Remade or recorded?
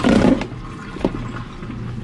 recorded